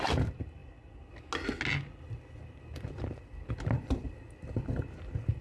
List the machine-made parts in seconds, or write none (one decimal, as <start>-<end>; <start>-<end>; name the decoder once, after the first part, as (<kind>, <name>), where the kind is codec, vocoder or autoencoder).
none